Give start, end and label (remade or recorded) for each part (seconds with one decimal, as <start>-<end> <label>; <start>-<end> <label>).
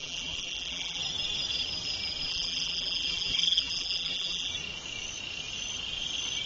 0.0-1.0 remade; 1.0-2.3 recorded; 2.3-4.5 remade; 4.5-6.5 recorded